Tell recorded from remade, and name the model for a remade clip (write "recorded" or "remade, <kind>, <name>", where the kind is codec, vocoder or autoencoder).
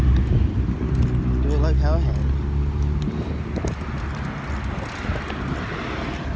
recorded